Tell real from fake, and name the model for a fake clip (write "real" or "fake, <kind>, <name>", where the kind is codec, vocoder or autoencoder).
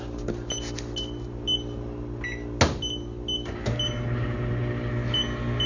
real